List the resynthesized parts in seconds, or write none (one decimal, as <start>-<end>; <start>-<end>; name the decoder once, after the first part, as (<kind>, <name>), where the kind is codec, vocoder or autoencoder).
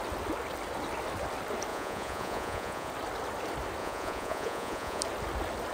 1.7-2.9 (vocoder, Vocos); 3.8-5.0